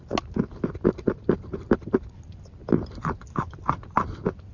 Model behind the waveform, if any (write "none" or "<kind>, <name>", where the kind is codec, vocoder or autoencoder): none